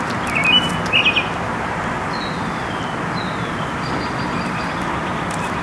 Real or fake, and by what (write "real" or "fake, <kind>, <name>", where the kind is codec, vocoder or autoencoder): real